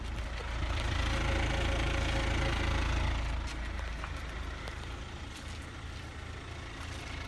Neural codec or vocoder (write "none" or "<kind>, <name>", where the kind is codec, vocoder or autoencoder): none